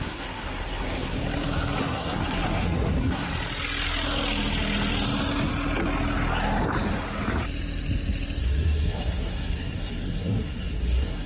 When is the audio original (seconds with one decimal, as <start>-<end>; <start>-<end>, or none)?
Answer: 1.2-1.8; 3.3-8.4